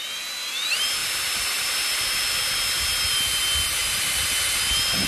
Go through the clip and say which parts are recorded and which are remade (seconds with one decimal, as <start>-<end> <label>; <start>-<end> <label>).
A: 0.0-5.1 recorded